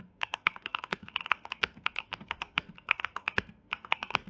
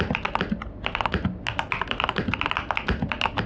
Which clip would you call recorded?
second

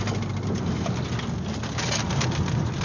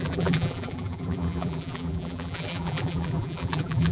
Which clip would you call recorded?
first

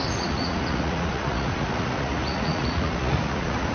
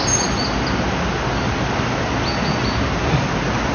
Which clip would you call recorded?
second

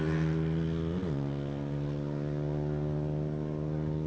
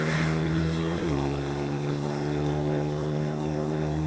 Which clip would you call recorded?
first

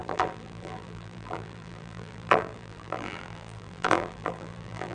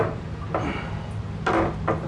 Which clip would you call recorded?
second